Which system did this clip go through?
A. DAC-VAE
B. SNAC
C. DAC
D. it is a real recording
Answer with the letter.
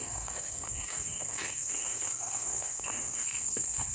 B